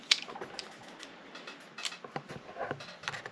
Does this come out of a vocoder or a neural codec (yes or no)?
no